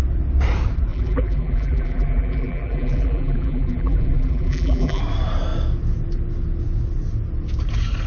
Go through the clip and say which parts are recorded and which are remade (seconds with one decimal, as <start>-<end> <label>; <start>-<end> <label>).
0.0-0.9 recorded; 0.9-5.0 remade; 5.0-8.1 recorded